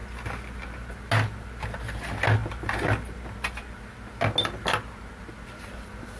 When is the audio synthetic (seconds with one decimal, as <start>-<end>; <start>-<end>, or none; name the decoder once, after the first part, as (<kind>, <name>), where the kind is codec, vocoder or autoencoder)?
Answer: none